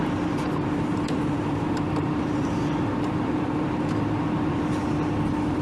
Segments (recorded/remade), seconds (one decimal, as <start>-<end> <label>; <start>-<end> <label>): 0.0-4.8 remade; 4.8-5.6 recorded

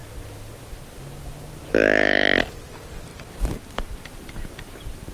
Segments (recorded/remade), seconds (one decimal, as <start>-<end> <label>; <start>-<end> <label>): 0.0-3.1 recorded; 3.1-3.6 remade; 3.6-5.1 recorded

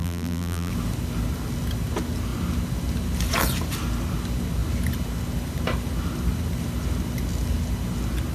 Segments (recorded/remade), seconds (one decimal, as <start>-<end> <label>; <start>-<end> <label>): 0.0-0.7 remade; 0.7-8.3 recorded